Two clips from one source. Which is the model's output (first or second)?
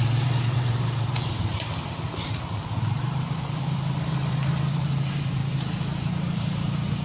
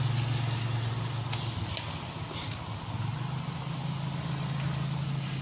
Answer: first